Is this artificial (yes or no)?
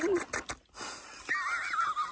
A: no